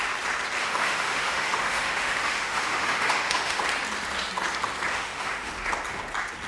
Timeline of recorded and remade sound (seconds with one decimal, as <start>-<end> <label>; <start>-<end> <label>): 0.0-0.6 recorded; 0.6-3.6 remade; 3.6-4.9 recorded; 4.9-5.5 remade; 5.5-6.5 recorded